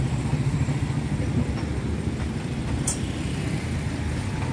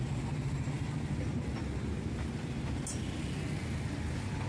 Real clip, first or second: second